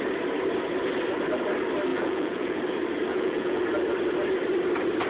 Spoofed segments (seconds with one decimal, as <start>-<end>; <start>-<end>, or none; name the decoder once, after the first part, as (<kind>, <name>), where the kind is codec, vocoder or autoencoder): 1.9-2.6 (vocoder, Vocos); 3.1-3.6